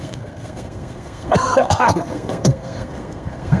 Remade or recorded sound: remade